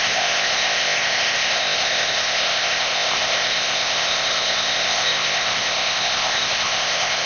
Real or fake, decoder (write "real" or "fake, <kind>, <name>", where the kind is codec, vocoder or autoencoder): fake, codec, ZipCodec